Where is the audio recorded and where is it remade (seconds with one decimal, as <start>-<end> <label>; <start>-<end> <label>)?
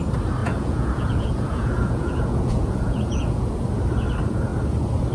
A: 0.0-0.4 recorded; 0.4-3.5 remade; 3.5-5.1 recorded